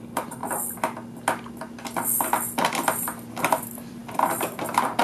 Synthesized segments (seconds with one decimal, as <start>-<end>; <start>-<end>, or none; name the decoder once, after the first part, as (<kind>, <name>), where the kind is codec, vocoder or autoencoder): 0.0-0.4 (vocoder, BigVGAN v2); 3.4-5.0